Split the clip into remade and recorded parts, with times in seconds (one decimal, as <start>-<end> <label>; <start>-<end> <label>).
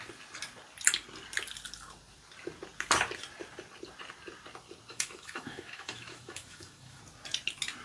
0.0-4.9 recorded; 4.9-7.0 remade; 7.0-7.8 recorded